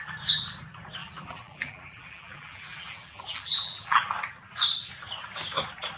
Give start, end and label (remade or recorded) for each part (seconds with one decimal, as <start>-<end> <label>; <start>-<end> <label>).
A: 0.0-1.0 recorded; 1.0-4.1 remade; 4.1-6.0 recorded